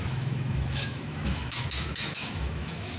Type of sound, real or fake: fake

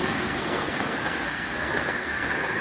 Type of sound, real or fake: fake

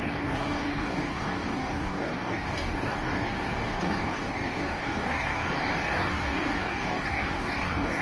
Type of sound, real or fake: fake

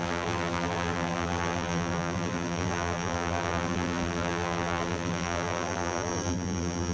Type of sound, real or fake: fake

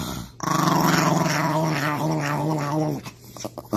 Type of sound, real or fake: real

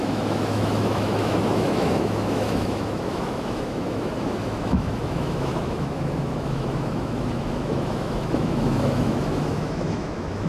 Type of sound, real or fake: fake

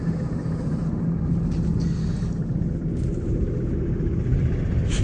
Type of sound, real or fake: real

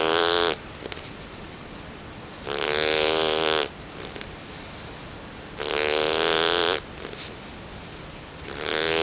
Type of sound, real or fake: real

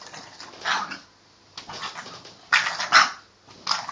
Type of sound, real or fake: real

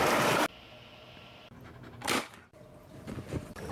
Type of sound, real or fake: real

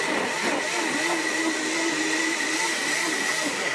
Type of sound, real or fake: fake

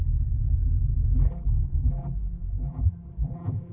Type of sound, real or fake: fake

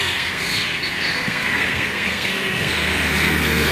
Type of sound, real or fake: fake